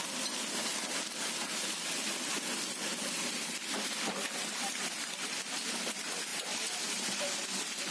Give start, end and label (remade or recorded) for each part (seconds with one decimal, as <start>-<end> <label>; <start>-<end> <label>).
0.0-2.9 recorded; 2.9-4.9 remade; 4.9-6.3 recorded; 6.3-7.2 remade; 7.2-7.9 recorded